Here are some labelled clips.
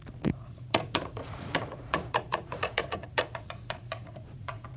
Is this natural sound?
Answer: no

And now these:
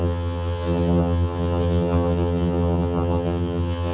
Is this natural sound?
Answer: no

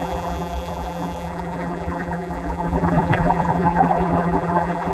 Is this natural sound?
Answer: no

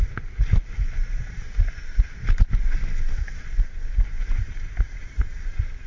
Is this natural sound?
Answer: yes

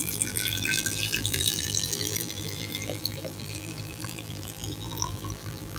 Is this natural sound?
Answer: no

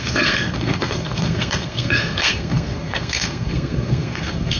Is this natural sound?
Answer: no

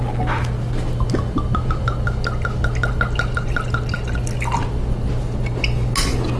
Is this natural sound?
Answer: yes